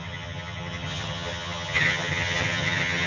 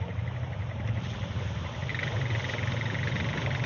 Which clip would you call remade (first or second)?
first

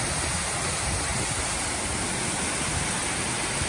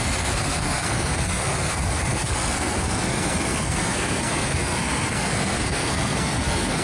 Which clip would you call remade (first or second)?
second